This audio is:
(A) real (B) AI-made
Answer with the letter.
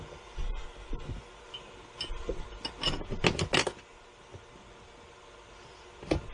A